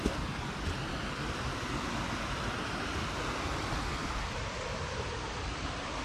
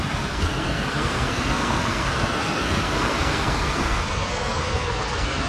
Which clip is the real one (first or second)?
first